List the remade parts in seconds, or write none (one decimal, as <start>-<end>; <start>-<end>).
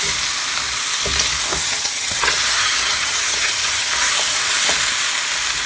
1.6-3.9